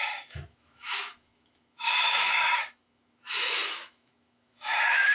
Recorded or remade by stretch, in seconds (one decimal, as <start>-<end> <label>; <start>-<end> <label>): 0.0-5.1 remade